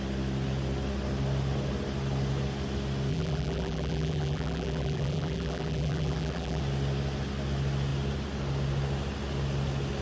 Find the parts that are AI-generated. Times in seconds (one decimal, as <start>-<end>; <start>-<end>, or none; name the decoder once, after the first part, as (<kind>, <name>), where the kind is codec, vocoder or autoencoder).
3.1-6.6 (vocoder, BigVGAN v2)